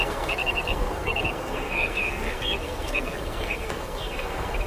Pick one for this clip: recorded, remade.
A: remade